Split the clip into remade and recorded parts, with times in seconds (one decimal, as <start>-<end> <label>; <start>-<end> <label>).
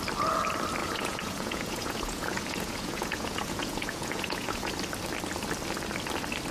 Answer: 0.0-0.8 recorded; 0.8-4.7 remade; 4.7-6.5 recorded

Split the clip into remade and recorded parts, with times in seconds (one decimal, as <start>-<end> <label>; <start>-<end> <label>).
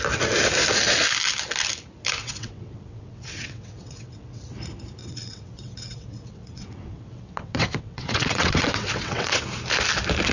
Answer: 0.0-2.2 recorded; 2.2-4.4 remade; 4.4-5.0 recorded; 5.0-9.4 remade; 9.4-10.3 recorded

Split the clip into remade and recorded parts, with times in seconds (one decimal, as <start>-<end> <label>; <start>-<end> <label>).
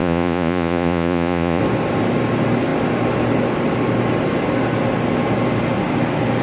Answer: 0.0-1.6 remade; 1.6-6.4 recorded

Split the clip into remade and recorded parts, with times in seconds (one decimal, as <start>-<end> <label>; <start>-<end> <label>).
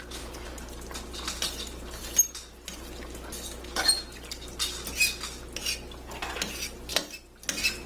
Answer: 0.0-7.9 recorded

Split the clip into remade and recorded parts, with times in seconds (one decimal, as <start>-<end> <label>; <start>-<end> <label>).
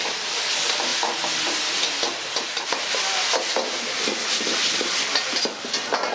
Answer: 0.0-6.1 recorded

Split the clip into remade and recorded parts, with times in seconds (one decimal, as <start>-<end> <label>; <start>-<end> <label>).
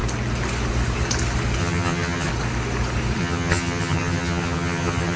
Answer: 0.0-1.6 recorded; 1.6-2.3 remade; 2.3-3.2 recorded; 3.2-5.2 remade